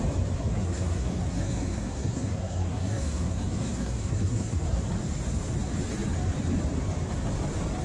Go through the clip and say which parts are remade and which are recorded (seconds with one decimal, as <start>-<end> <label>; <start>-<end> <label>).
0.0-0.5 recorded; 0.5-4.8 remade; 4.8-7.8 recorded